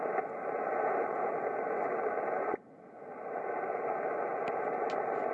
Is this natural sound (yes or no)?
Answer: yes